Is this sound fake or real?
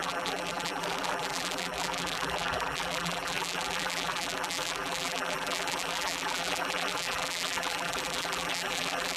fake